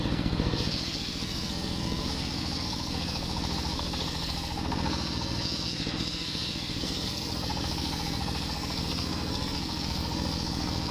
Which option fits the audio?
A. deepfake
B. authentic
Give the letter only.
A